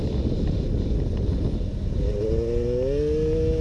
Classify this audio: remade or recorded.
recorded